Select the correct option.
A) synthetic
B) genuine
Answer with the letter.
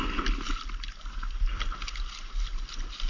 B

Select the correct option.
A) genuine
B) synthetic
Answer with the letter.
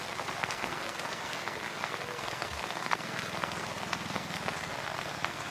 B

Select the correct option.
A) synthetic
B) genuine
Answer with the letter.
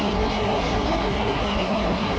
A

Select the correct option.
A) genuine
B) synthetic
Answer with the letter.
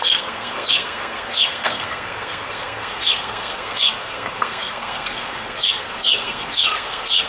B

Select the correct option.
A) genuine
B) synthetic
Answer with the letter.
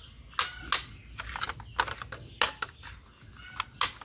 A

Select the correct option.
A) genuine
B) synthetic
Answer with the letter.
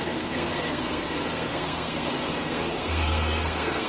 B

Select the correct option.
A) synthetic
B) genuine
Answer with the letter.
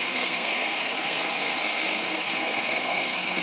A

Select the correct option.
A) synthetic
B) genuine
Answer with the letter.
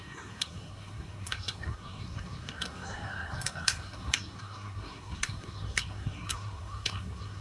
A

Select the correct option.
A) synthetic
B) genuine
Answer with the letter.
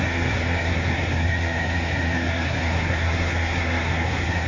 A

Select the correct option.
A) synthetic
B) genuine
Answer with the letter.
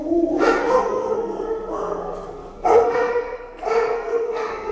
A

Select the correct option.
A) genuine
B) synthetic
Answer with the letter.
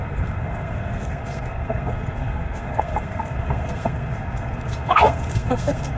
B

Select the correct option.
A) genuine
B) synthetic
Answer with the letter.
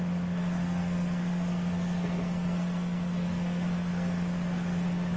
B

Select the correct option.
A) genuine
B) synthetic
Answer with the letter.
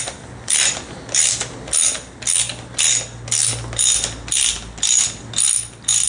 A